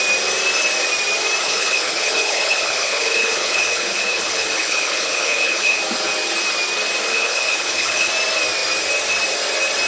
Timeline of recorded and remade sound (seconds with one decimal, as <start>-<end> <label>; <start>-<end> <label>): 0.0-1.4 recorded; 1.4-5.8 remade; 5.8-7.1 recorded; 7.1-8.1 remade; 8.1-9.9 recorded